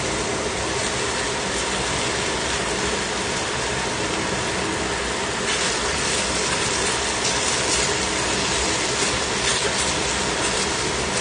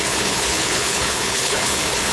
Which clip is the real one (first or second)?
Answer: first